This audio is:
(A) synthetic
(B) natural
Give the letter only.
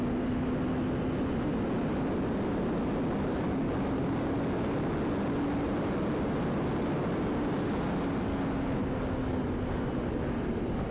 B